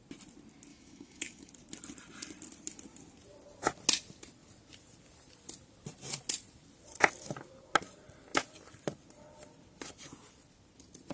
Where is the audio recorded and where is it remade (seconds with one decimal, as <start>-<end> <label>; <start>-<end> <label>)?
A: 0.0-0.7 recorded; 0.7-1.5 remade; 1.5-11.1 recorded